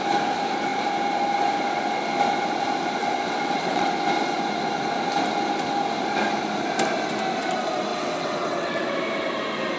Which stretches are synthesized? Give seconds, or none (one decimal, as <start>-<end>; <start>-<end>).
3.0-3.9; 7.9-8.9